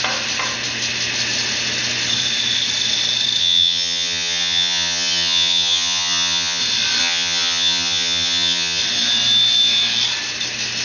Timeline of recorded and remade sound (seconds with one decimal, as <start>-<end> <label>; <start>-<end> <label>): 0.0-3.4 recorded; 3.4-6.6 remade; 6.6-7.0 recorded; 7.0-8.8 remade; 8.8-10.8 recorded